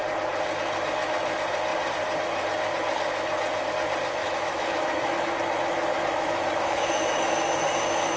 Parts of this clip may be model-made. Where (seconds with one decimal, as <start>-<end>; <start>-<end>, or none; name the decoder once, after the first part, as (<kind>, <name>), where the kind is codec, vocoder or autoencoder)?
4.2-5.3 (autoencoder, DAC-VAE); 5.9-6.9